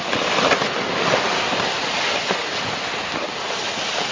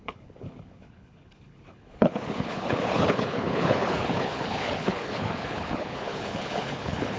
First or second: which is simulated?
second